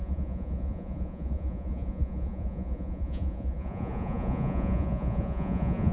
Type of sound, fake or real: fake